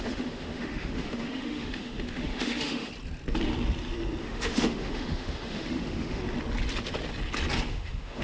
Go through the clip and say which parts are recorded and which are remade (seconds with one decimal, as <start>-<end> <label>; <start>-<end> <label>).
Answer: 0.0-2.9 remade; 2.9-4.2 recorded; 4.2-6.2 remade; 6.2-7.7 recorded; 7.7-8.2 remade